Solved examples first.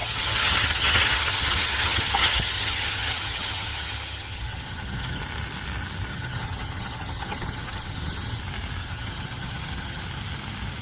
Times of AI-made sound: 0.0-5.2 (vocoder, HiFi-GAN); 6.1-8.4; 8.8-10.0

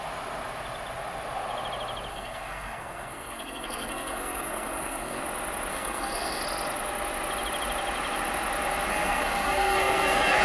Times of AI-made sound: 2.1-5.2 (codec, SNAC); 5.7-6.4; 8.9-10.4

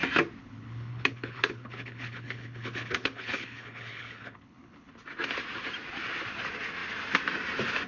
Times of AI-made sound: 0.4-4.9 (codec, HILCodec)

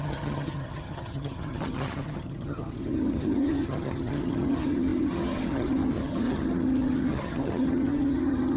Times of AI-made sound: 0.0-8.6 (vocoder, HiFi-GAN)

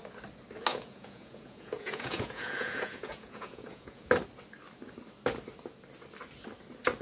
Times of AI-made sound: 0.7-4.1 (vocoder, Vocos)

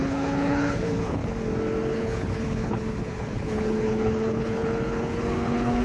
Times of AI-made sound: 0.0-1.2 (codec, HILCodec); 1.9-5.8